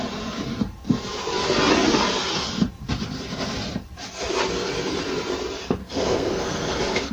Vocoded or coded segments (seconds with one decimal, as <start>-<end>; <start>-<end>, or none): 5.8-7.1